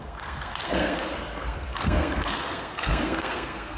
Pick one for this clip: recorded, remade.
remade